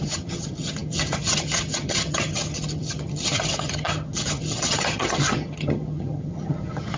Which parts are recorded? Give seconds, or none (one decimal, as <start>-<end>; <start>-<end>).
none